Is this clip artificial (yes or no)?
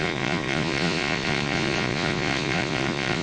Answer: yes